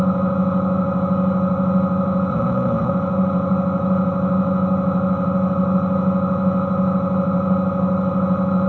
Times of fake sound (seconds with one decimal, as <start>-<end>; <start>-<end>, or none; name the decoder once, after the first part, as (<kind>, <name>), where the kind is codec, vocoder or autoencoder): 2.3-2.9 (codec, ZipCodec)